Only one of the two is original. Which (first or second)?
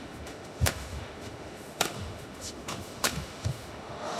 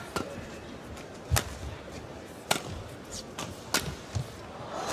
second